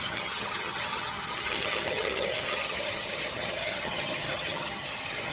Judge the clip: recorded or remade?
remade